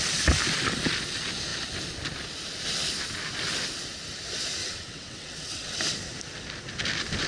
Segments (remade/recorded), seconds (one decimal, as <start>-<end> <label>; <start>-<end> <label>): 0.0-4.6 recorded; 4.6-5.8 remade; 5.8-7.3 recorded